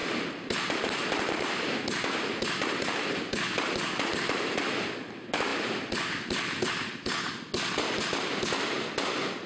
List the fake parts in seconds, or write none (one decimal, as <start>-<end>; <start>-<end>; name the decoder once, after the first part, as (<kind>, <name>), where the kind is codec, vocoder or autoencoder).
none